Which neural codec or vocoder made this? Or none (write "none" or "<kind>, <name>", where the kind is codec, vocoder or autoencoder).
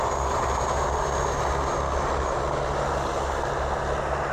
none